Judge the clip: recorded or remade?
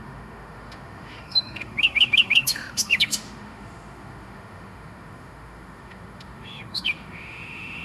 remade